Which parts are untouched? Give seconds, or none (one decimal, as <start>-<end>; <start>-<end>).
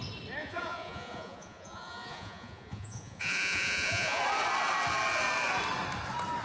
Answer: 0.0-0.4; 4.2-6.4